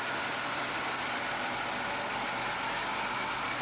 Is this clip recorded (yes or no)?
yes